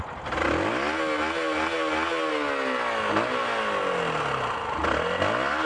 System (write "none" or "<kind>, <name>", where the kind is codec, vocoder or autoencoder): none